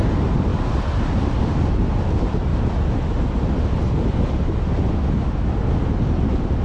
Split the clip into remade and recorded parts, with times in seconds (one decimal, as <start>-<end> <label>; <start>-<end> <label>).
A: 0.0-6.6 recorded